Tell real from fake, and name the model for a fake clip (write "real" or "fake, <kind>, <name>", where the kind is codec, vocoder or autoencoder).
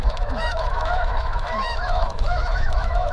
fake, autoencoder, DAC-VAE